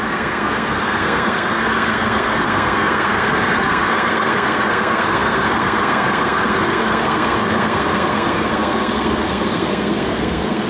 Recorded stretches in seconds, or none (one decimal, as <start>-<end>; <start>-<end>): none